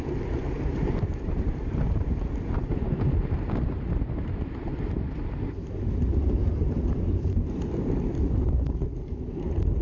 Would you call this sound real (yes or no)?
no